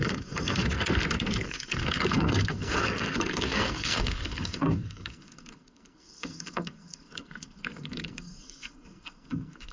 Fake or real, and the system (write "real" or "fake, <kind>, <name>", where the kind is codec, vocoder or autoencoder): fake, codec, SNAC